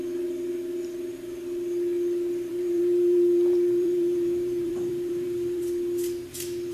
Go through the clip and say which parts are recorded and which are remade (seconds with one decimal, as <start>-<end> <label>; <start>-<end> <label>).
0.0-2.5 recorded; 2.5-5.6 remade; 5.6-6.7 recorded